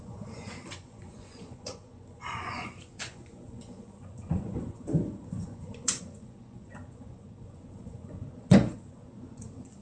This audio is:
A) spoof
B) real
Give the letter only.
A